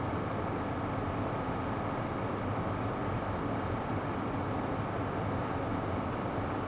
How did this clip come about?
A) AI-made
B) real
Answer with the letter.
B